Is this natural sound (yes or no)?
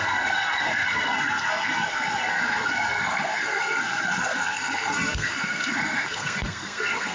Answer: no